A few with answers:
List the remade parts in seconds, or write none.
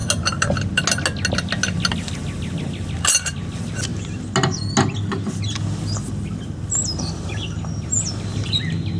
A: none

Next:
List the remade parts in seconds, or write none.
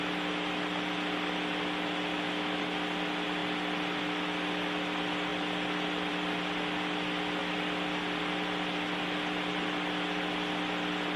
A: 2.1-2.6 (autoencoder, DAC-VAE)